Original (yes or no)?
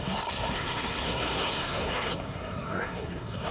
no